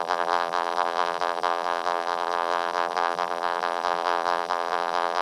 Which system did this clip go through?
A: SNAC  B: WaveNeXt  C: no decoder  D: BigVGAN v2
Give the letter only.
D